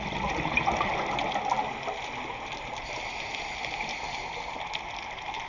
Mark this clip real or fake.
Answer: real